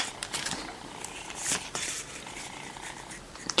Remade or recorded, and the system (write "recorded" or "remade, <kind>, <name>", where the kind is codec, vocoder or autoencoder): remade, vocoder, BigVGAN v2